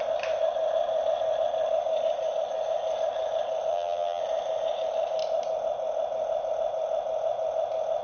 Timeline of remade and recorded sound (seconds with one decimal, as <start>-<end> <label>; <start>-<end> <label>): 0.0-3.7 recorded; 3.7-4.2 remade; 4.2-8.0 recorded